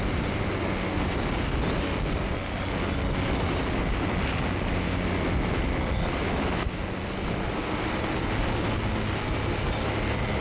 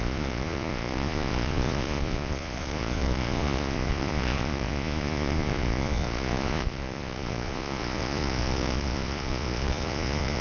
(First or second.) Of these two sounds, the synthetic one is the second